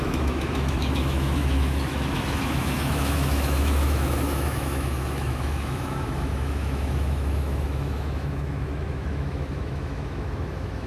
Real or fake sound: fake